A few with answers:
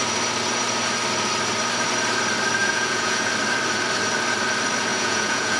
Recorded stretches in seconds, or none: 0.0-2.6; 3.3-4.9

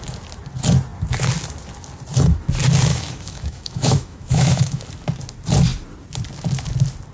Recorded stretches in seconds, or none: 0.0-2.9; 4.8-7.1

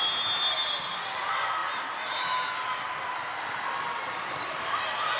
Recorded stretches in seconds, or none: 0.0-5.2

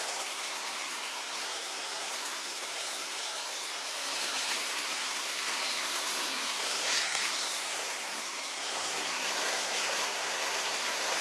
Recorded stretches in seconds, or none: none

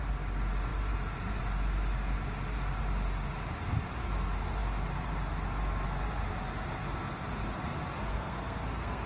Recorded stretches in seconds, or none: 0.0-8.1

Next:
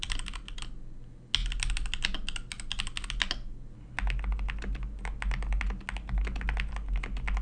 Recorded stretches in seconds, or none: 0.0-7.4

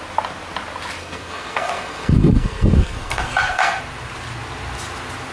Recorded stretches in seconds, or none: 0.0-1.0; 3.8-5.3

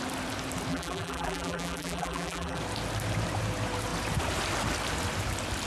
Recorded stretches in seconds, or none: 0.0-0.7; 2.6-5.7